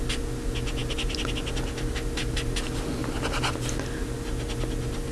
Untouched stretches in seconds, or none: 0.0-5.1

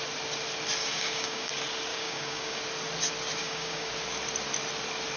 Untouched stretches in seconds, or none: 0.0-0.8; 1.5-1.9; 2.6-3.4; 3.9-5.2

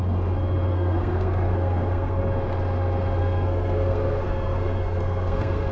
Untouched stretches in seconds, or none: 0.0-0.7; 2.2-3.2

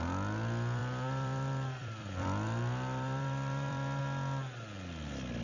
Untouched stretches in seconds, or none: 0.0-0.8; 4.0-5.4